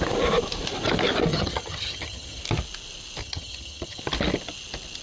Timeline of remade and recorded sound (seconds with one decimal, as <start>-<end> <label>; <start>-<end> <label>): 0.0-1.3 recorded; 1.3-2.4 remade; 2.4-3.2 recorded; 3.2-4.0 remade; 4.0-5.0 recorded